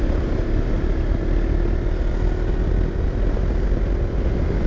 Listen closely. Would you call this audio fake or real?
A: real